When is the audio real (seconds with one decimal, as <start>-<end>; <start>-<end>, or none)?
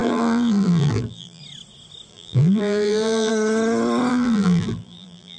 1.4-2.1; 3.3-4.1